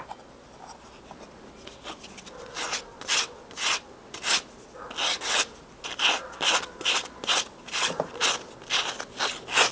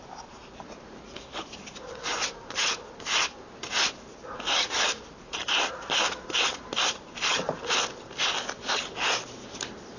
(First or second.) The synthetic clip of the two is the second